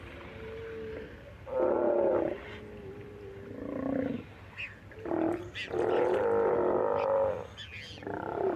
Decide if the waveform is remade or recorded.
recorded